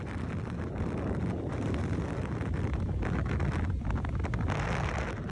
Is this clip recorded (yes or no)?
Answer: yes